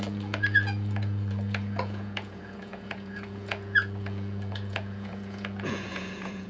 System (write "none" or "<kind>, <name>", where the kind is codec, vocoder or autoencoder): vocoder, Vocos